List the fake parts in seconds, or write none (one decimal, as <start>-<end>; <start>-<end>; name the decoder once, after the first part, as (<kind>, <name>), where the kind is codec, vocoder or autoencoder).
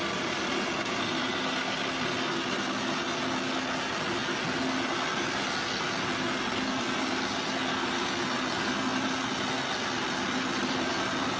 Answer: none